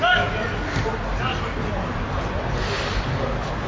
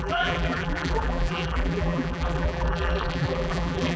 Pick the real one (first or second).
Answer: first